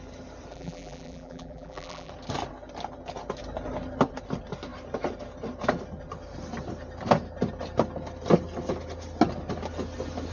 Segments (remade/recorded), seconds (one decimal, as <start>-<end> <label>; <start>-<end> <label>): 0.0-0.5 recorded; 0.5-2.1 remade; 2.1-10.3 recorded